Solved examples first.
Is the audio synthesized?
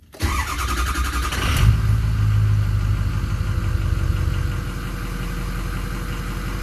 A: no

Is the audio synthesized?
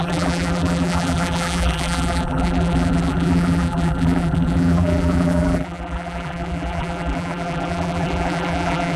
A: yes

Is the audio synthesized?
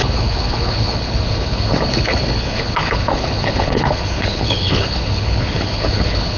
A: yes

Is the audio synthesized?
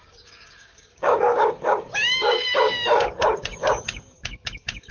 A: yes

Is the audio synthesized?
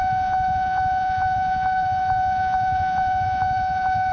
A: yes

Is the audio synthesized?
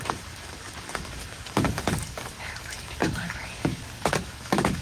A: yes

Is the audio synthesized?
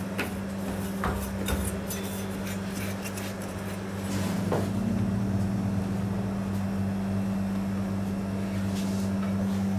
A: no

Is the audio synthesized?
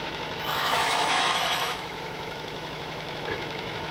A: yes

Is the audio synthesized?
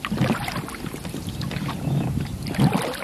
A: no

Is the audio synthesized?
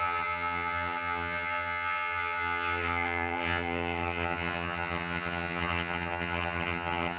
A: yes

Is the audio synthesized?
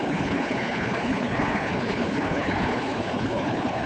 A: yes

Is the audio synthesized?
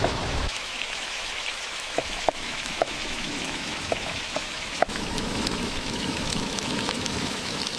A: yes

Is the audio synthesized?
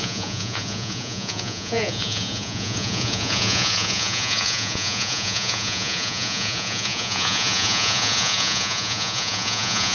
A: yes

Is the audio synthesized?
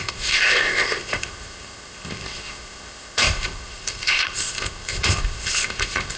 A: yes